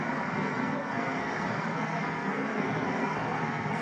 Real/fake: fake